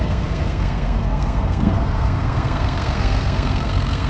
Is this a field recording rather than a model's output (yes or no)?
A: no